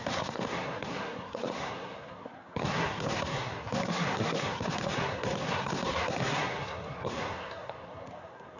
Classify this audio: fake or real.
fake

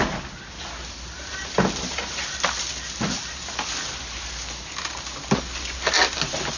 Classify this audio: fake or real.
real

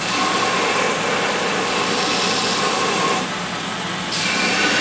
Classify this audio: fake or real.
real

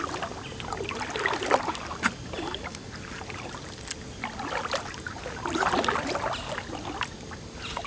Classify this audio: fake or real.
real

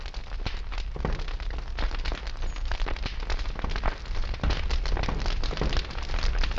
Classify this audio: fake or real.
real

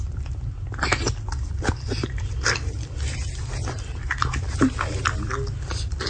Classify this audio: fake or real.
real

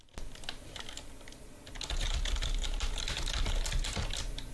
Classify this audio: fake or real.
real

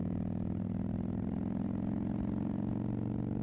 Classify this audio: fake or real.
real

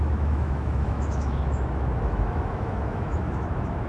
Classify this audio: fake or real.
fake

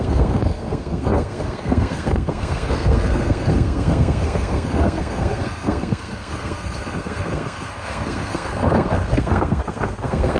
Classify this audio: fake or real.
fake